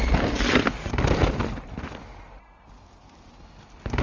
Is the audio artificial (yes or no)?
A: no